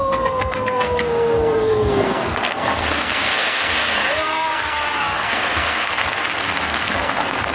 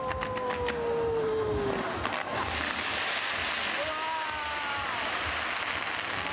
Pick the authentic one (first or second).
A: second